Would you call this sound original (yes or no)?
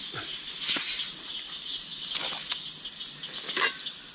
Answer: yes